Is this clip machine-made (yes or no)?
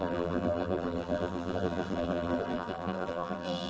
yes